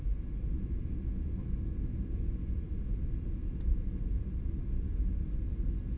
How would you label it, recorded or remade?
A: recorded